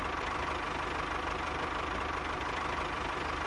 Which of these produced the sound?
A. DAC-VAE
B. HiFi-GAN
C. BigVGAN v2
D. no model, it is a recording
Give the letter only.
D